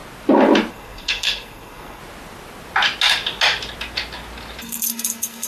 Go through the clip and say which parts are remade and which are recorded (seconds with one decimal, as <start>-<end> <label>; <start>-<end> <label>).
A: 0.0-0.7 recorded; 0.7-2.0 remade; 2.0-4.6 recorded; 4.6-5.5 remade